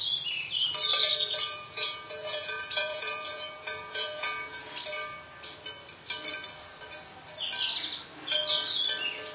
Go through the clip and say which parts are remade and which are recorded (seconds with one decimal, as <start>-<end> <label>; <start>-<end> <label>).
0.0-1.1 recorded; 1.1-4.7 remade; 4.7-9.3 recorded